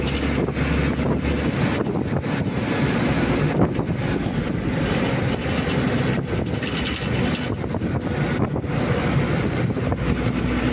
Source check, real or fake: real